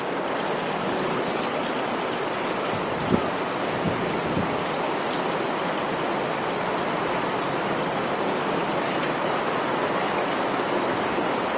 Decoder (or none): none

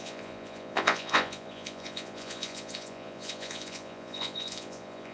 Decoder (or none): vocoder, Vocos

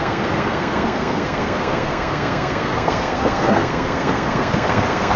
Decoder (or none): codec, SNAC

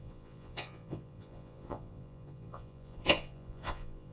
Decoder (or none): vocoder, Vocos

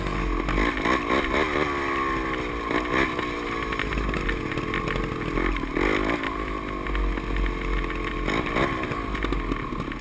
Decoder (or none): none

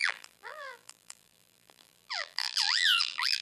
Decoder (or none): vocoder, BigVGAN v2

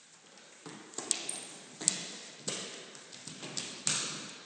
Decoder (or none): none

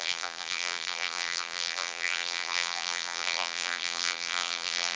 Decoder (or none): vocoder, BigVGAN v2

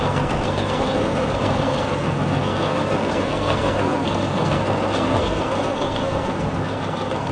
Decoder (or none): codec, SNAC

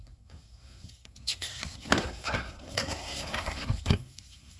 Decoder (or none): codec, SNAC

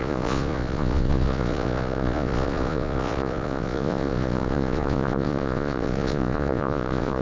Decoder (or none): vocoder, Vocos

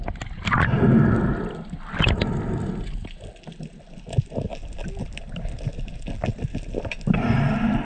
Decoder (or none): none